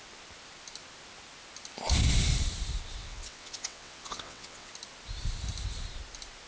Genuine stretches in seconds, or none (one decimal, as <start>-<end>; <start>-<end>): 0.0-3.0; 4.7-6.5